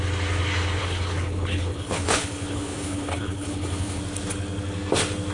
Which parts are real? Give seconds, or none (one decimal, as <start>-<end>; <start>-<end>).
0.0-0.8; 4.0-5.3